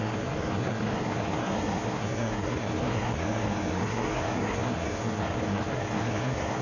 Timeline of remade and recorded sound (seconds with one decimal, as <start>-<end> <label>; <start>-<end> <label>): 0.0-6.6 remade